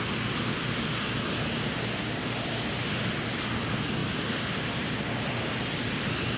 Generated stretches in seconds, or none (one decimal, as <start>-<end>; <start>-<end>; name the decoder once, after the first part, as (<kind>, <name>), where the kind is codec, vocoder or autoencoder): 4.0-4.9 (vocoder, BigVGAN v2)